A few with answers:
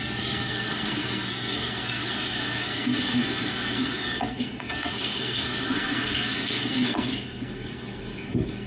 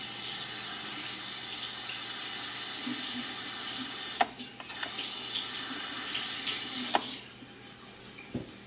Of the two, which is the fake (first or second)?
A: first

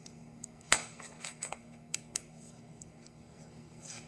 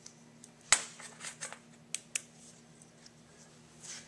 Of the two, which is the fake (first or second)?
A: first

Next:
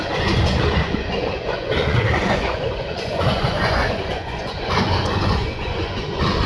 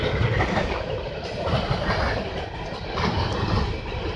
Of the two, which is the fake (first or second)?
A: first